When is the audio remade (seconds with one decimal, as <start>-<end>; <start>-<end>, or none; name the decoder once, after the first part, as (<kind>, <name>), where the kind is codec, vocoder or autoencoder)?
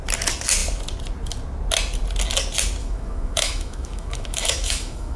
2.8-5.2 (autoencoder, DAC-VAE)